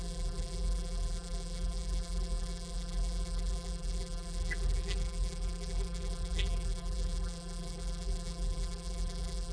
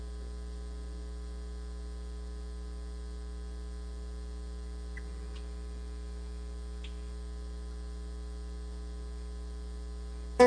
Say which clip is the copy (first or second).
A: first